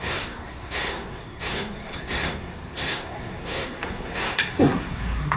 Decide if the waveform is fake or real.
fake